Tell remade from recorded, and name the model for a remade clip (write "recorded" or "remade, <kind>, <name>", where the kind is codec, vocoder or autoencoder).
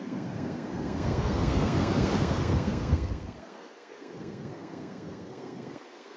remade, codec, SNAC